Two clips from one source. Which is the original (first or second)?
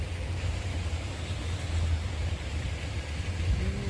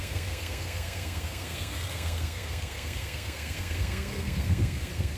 first